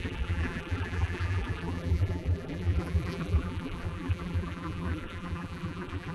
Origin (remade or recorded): remade